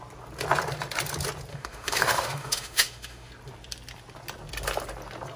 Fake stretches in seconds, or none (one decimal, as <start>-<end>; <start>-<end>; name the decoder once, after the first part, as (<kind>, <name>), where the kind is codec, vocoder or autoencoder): 1.5-3.3 (autoencoder, DAC-VAE)